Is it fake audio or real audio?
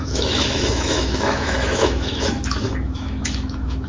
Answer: fake